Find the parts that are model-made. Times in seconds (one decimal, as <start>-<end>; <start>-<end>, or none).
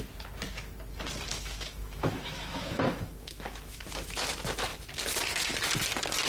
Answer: 1.3-4.3